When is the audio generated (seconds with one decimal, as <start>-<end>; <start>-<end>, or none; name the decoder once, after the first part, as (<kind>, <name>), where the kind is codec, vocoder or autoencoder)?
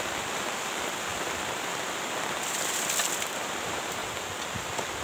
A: 0.0-4.0 (vocoder, BigVGAN v2)